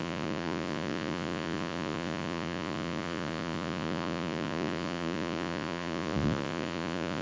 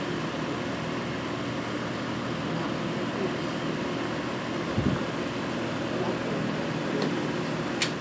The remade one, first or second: first